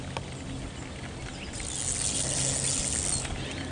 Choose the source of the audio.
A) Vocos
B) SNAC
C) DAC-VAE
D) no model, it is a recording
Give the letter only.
D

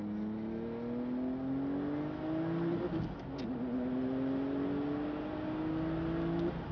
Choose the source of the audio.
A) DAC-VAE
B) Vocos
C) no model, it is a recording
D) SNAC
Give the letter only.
C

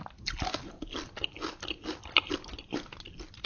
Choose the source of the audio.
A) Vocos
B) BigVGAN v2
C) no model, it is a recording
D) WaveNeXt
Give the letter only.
C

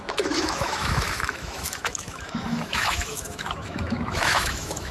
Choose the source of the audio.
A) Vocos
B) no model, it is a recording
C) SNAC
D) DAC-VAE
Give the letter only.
D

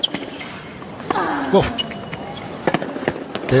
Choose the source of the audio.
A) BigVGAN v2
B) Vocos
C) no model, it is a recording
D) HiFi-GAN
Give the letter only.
C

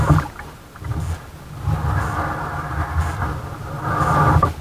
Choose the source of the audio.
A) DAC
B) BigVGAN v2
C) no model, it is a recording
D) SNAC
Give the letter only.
C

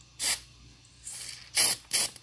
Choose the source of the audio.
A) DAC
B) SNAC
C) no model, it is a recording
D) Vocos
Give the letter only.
C